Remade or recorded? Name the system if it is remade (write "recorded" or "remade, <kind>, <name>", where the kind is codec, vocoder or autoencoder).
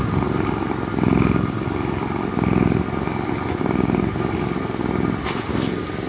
recorded